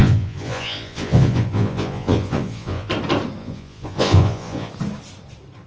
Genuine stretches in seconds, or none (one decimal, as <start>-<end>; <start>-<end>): 2.9-3.4; 4.7-5.7